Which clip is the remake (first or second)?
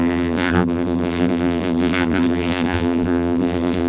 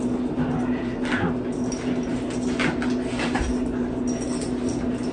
first